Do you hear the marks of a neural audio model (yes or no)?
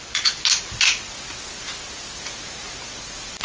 no